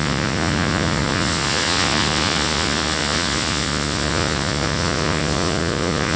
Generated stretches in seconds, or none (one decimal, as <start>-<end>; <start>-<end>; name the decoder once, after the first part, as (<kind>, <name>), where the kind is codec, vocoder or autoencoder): 0.0-6.2 (vocoder, Vocos)